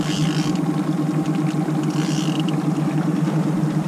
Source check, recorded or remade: recorded